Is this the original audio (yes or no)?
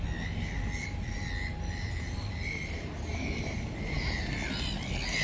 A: yes